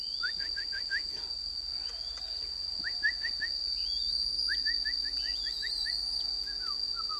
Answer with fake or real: real